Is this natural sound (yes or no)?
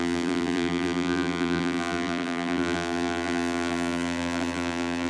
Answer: no